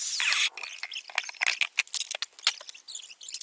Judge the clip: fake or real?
real